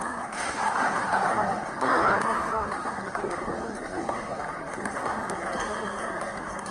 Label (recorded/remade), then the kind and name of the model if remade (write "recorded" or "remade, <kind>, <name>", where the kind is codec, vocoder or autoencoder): remade, codec, SNAC